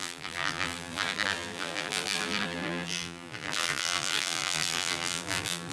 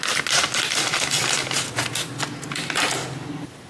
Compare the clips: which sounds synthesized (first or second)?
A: first